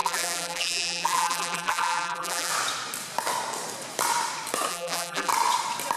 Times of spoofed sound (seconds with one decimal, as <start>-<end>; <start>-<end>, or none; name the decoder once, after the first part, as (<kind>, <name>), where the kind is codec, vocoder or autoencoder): 0.0-2.5 (vocoder, BigVGAN v2); 4.7-5.3